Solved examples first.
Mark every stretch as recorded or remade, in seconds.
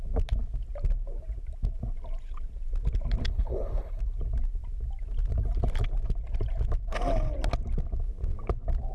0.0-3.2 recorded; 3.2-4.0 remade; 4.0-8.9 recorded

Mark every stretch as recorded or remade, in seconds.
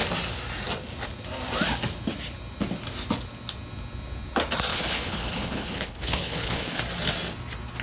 0.0-4.7 recorded; 4.7-6.8 remade; 6.8-7.8 recorded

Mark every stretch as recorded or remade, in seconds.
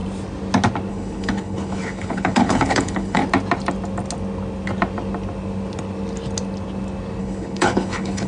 0.0-0.9 recorded; 0.9-3.2 remade; 3.2-7.2 recorded; 7.2-8.3 remade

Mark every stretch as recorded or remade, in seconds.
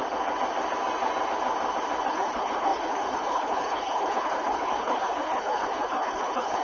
0.0-2.1 recorded; 2.1-6.6 remade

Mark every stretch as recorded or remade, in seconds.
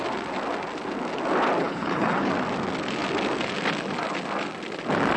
0.0-1.6 recorded; 1.6-2.3 remade; 2.3-5.2 recorded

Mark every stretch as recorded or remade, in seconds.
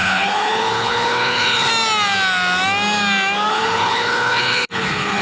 0.0-1.7 remade; 1.7-3.5 recorded; 3.5-5.2 remade